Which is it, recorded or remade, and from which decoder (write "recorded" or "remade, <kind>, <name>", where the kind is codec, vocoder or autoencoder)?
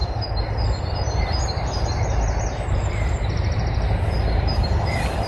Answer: recorded